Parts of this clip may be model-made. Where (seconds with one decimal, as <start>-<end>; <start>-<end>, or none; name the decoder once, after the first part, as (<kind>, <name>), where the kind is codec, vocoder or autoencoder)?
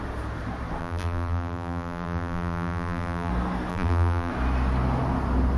0.8-3.3 (vocoder, BigVGAN v2); 3.7-4.3